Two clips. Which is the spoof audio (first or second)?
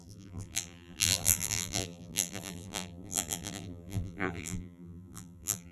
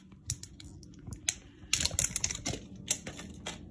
first